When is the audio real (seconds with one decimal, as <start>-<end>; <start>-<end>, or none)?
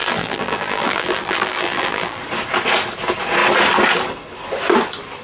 2.2-5.2